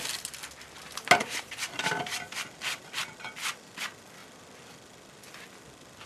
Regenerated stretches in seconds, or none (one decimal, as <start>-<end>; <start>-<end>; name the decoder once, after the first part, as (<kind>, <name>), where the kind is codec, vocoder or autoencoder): 1.2-3.0 (vocoder, BigVGAN v2); 4.2-5.2